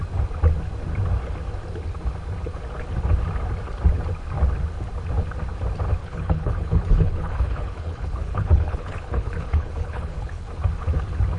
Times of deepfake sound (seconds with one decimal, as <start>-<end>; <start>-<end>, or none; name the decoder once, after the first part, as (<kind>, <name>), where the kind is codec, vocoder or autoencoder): 6.0-10.5 (codec, HILCodec)